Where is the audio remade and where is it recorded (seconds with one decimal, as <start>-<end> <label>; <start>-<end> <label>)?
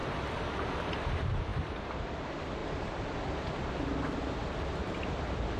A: 0.0-0.9 recorded; 0.9-5.6 remade